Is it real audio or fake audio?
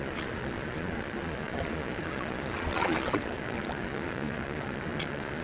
fake